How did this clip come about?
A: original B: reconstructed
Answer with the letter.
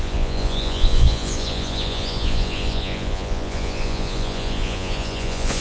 B